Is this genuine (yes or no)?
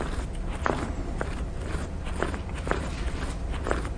yes